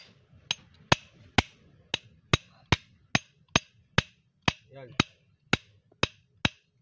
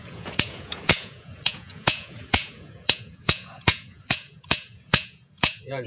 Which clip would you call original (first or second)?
first